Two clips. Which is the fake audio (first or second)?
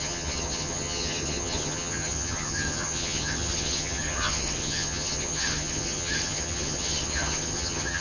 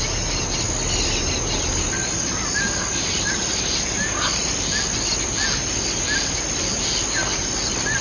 first